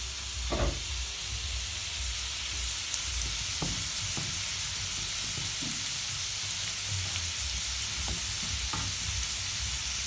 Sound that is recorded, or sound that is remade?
recorded